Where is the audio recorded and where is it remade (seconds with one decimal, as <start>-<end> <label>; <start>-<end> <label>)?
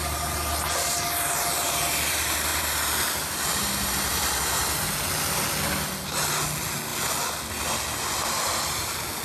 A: 0.0-2.5 recorded; 2.5-4.2 remade; 4.2-9.2 recorded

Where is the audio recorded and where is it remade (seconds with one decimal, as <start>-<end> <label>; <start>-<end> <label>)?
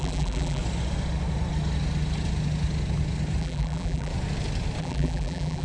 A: 0.0-0.6 remade; 0.6-3.4 recorded; 3.4-4.1 remade; 4.1-4.8 recorded; 4.8-5.6 remade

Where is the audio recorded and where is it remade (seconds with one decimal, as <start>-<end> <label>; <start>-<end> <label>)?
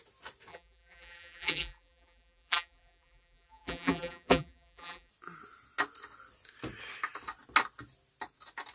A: 0.0-0.5 recorded; 0.5-5.1 remade; 5.1-8.7 recorded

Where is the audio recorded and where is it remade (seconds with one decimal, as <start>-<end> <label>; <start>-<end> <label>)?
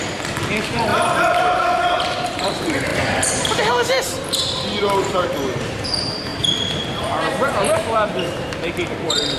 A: 0.0-9.4 remade